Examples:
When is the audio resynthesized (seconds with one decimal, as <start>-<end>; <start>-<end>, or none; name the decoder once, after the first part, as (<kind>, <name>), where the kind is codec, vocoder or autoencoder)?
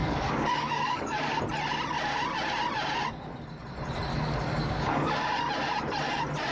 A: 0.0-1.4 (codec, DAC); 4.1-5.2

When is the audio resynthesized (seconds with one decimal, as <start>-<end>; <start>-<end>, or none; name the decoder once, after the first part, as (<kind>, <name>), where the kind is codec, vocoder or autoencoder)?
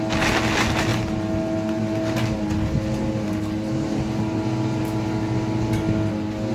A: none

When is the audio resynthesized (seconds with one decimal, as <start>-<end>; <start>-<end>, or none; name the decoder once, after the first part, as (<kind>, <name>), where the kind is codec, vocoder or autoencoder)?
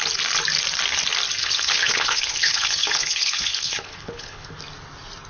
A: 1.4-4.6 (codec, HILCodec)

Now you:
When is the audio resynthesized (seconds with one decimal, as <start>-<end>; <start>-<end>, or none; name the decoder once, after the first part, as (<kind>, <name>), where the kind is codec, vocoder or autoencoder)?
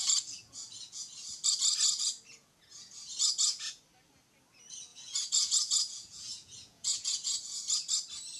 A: 0.0-1.1 (vocoder, Vocos); 2.3-3.8; 4.9-7.6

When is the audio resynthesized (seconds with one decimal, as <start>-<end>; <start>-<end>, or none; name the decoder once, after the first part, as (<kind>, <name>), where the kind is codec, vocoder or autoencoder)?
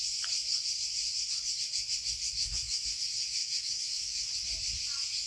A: 2.4-3.0 (autoencoder, DAC-VAE); 3.4-4.3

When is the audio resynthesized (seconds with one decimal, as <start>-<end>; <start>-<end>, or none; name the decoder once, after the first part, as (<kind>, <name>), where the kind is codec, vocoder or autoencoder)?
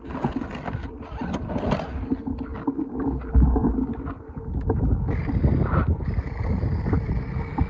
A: none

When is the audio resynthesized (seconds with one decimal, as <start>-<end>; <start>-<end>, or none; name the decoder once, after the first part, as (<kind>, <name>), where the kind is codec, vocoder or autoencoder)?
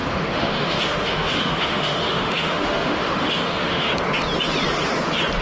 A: 0.0-3.9 (autoencoder, DAC-VAE)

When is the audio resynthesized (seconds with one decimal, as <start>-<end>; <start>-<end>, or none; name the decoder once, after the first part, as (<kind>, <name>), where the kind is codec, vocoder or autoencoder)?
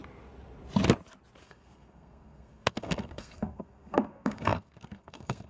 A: 1.4-5.5 (codec, SNAC)